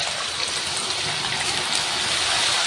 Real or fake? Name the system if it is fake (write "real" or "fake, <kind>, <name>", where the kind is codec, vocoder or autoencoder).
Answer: real